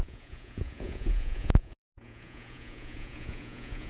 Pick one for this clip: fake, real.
fake